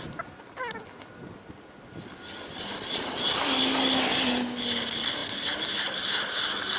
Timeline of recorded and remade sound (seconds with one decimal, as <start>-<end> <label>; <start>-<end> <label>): 0.0-6.8 recorded